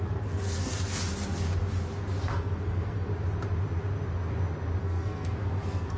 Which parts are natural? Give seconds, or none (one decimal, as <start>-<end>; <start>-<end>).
0.9-2.3; 3.1-4.8